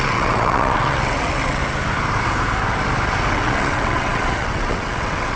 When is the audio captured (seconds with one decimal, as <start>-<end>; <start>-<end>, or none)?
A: 1.6-3.3

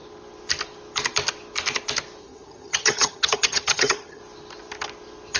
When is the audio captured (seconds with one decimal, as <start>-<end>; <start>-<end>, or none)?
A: 0.0-2.2; 4.2-5.4

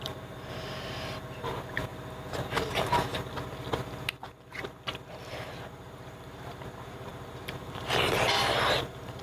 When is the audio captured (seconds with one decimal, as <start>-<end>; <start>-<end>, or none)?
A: 1.9-2.6; 3.1-5.3

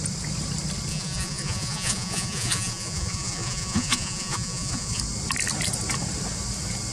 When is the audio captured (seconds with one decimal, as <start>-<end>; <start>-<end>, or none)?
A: 0.0-0.9; 5.0-6.9

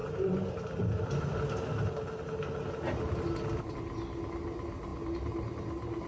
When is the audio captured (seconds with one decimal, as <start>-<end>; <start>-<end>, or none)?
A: 0.0-6.1

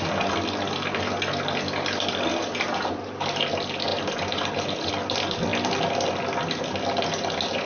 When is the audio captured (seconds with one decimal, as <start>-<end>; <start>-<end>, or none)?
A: 0.0-2.3; 3.4-3.9; 4.9-7.7